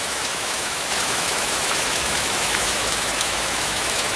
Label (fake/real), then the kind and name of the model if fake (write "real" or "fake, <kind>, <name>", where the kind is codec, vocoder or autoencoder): fake, autoencoder, DAC-VAE